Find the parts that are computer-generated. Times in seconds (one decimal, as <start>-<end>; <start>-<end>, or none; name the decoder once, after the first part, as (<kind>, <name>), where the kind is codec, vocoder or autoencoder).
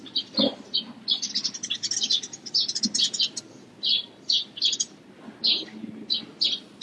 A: none